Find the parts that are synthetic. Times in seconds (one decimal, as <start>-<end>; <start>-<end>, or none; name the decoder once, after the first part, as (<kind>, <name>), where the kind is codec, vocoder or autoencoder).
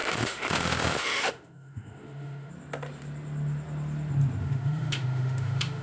0.0-2.5 (autoencoder, DAC-VAE); 4.4-5.8